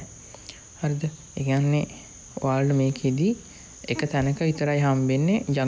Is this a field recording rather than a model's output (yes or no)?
yes